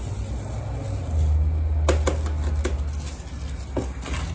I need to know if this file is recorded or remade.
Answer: recorded